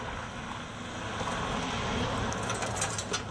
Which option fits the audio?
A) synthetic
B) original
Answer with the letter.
B